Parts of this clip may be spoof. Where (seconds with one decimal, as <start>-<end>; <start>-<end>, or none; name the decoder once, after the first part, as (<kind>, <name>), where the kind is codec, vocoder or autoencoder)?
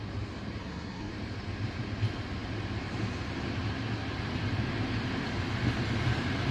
0.6-1.1 (codec, SNAC)